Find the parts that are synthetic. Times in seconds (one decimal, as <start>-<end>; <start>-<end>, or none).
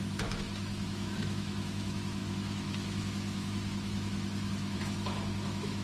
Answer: 0.0-5.8